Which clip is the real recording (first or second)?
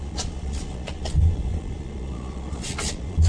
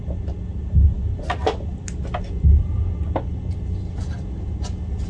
second